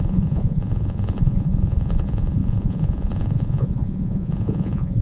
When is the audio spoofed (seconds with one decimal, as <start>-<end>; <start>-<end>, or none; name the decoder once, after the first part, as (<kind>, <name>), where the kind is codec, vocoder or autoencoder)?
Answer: 0.0-5.0 (vocoder, Vocos)